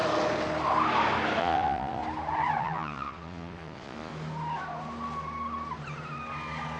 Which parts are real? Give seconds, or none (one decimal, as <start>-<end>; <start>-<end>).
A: 0.0-1.4; 2.0-2.6; 4.1-6.8